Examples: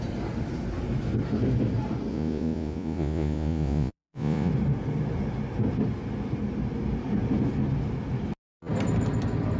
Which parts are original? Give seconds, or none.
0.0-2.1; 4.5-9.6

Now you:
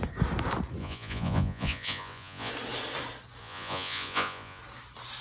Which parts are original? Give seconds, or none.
0.0-0.8; 2.5-3.4; 4.6-5.2

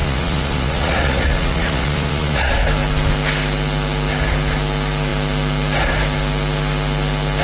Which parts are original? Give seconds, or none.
2.5-7.4